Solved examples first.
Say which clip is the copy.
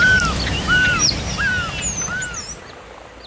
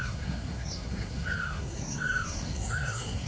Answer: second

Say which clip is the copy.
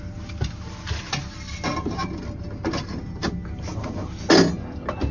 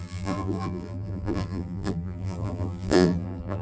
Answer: second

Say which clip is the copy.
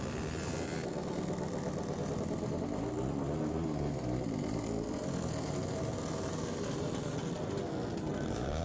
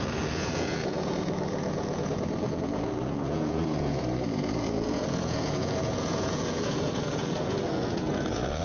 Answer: second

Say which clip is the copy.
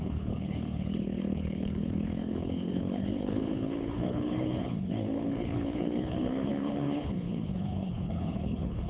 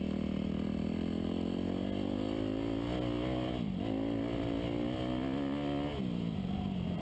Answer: first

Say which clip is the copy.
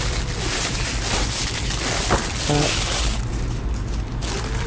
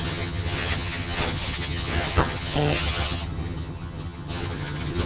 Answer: second